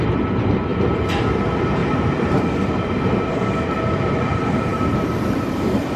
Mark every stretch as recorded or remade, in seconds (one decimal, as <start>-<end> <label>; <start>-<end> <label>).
0.0-1.8 recorded; 1.8-2.4 remade; 2.4-6.0 recorded